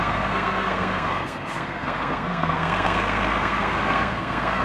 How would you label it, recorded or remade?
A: remade